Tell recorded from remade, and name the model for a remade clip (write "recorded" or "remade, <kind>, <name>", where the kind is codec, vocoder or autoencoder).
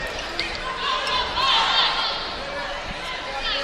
recorded